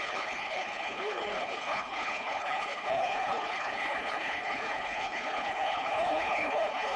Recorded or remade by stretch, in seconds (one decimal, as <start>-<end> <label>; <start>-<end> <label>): 0.0-7.0 remade